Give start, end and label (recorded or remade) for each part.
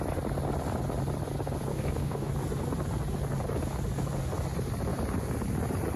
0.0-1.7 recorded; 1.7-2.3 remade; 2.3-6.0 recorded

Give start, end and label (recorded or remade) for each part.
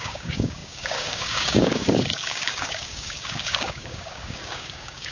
0.0-5.1 remade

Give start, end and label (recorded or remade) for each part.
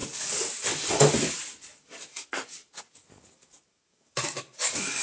0.0-0.9 remade; 0.9-1.7 recorded; 1.7-5.0 remade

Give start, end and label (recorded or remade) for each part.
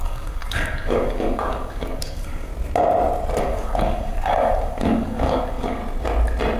0.0-2.5 remade; 2.5-3.4 recorded; 3.4-5.8 remade; 5.8-6.6 recorded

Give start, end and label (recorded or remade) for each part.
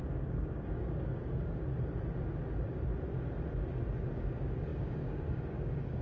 0.0-1.7 remade; 1.7-4.1 recorded; 4.1-6.0 remade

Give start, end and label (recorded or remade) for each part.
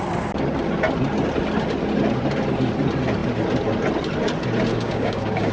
0.0-4.7 recorded; 4.7-5.5 remade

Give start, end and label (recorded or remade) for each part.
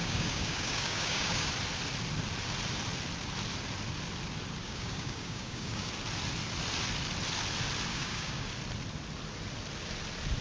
0.0-1.5 remade; 1.5-4.6 recorded; 4.6-5.9 remade; 5.9-7.9 recorded; 7.9-8.5 remade; 8.5-10.4 recorded